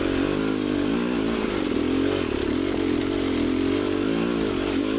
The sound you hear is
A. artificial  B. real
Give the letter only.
B